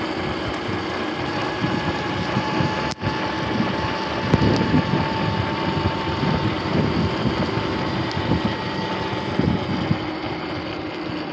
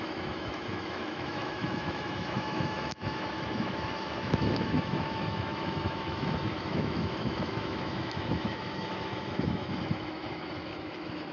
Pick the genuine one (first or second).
first